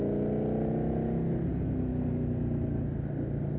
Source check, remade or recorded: recorded